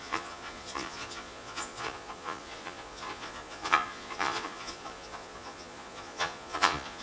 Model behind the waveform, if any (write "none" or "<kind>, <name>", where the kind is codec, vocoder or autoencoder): vocoder, Vocos